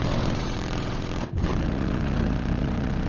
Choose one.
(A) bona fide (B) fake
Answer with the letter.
B